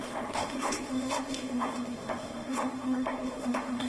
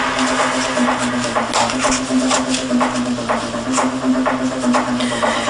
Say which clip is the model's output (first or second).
first